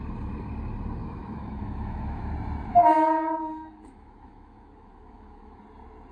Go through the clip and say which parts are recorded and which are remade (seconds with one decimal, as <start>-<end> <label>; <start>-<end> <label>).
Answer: 0.0-1.0 recorded; 1.0-2.3 remade; 2.3-2.7 recorded; 2.7-5.6 remade; 5.6-6.1 recorded